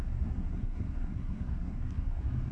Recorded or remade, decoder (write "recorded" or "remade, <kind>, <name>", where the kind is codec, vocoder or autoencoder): remade, codec, SNAC